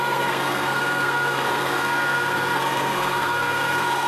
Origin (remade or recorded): remade